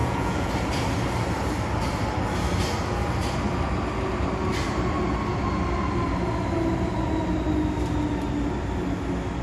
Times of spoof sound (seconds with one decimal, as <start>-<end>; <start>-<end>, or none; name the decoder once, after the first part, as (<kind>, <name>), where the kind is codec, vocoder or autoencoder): 0.0-0.5 (vocoder, Vocos)